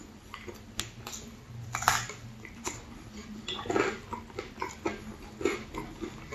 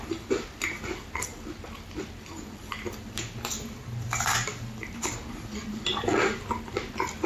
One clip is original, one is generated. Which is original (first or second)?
first